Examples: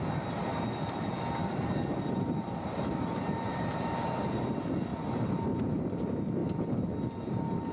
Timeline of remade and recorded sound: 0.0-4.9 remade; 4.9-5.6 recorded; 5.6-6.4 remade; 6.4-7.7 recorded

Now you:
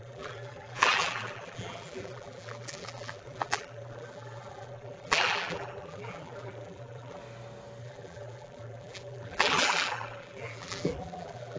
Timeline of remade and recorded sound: 0.0-7.2 remade; 7.2-7.8 recorded; 7.8-11.6 remade

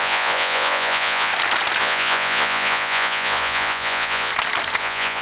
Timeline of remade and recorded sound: 0.0-1.3 remade; 1.3-1.8 recorded; 1.8-4.3 remade; 4.3-4.8 recorded; 4.8-5.2 remade